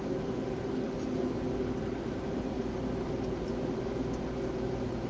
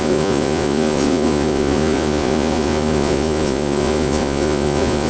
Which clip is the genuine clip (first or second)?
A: first